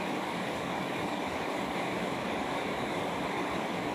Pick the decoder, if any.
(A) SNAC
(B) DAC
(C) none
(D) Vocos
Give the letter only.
B